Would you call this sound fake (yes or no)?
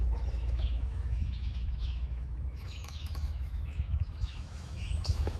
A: yes